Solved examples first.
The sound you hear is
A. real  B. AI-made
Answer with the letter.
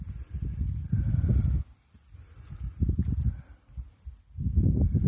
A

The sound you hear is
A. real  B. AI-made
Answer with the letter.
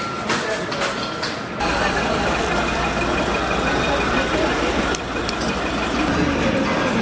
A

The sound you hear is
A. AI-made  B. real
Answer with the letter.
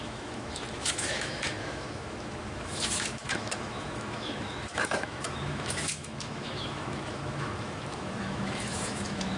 A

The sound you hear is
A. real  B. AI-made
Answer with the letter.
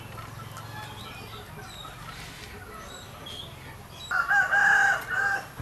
A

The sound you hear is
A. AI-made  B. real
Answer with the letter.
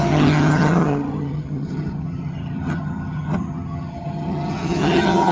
A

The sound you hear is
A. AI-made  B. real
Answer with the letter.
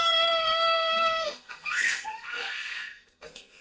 A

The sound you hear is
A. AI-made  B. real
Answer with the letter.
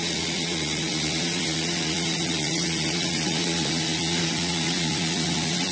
A